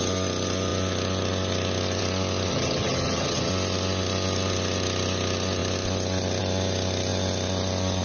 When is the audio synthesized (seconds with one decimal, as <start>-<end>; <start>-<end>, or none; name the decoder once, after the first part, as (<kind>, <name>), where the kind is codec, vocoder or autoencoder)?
2.5-3.5 (vocoder, HiFi-GAN)

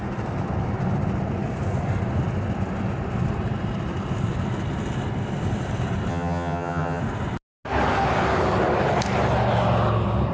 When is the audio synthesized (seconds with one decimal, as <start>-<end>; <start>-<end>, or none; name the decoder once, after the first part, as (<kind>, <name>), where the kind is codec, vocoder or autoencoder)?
6.1-7.0 (vocoder, HiFi-GAN)

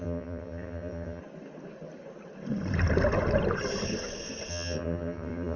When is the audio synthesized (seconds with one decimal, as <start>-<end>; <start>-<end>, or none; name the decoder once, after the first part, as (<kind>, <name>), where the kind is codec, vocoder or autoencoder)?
0.0-1.2 (vocoder, HiFi-GAN); 4.5-5.6